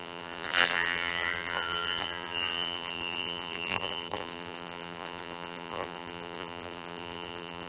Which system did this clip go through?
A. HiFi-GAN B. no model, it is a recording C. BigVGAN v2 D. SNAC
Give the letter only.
C